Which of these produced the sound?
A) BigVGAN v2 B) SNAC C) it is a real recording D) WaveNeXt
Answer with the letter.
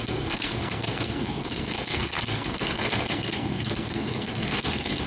B